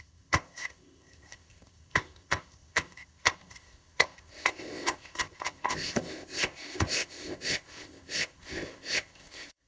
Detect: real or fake fake